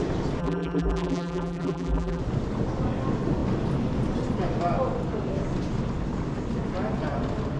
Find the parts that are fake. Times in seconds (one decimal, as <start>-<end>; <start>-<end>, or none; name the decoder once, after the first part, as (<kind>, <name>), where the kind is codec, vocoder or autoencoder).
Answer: 0.4-2.2 (vocoder, BigVGAN v2)